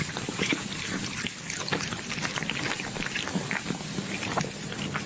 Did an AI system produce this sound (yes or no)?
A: yes